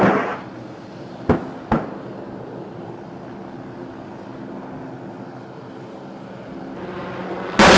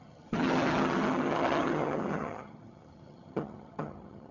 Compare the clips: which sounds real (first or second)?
first